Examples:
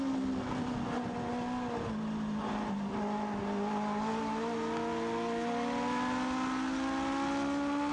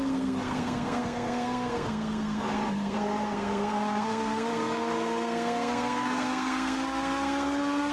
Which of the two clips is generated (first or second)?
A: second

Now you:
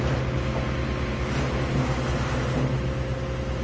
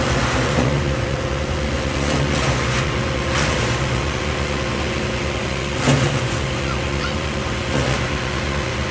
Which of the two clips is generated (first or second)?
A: second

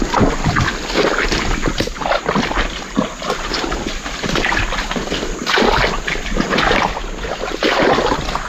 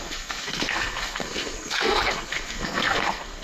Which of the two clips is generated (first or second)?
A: second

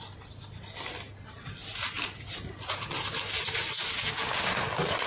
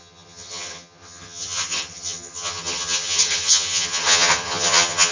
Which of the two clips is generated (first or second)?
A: second